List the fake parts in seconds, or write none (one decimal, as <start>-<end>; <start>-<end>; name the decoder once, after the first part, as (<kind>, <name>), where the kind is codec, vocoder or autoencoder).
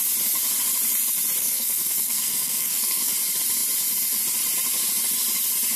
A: 1.4-3.1 (codec, SNAC)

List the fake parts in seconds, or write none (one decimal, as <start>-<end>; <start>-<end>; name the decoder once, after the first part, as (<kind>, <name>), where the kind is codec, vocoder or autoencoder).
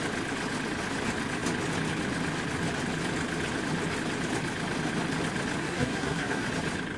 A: 5.6-6.5 (codec, SNAC)